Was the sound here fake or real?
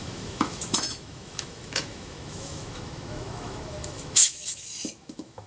fake